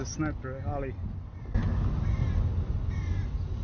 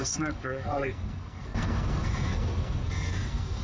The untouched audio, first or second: first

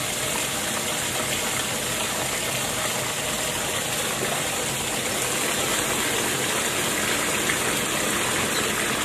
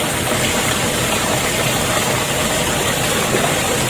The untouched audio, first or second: first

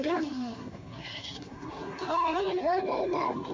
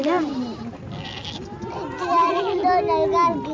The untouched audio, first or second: second